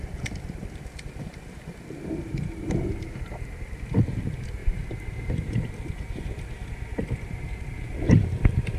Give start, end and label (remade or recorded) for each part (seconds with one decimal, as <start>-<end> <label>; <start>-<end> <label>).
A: 0.0-8.8 recorded